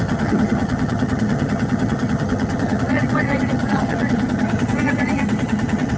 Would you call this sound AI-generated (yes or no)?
yes